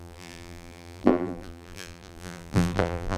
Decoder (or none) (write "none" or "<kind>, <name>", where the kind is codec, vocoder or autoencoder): vocoder, BigVGAN v2